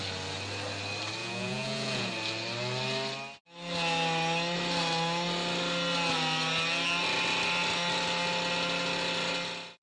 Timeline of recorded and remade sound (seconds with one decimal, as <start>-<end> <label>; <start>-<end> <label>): 0.0-1.2 recorded; 1.2-2.1 remade; 2.1-9.8 recorded